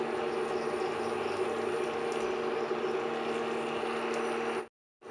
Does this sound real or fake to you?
real